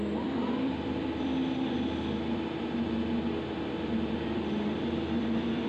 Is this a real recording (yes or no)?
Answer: no